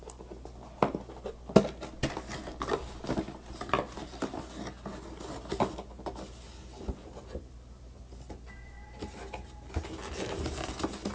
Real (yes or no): yes